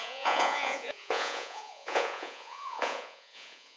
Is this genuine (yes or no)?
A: no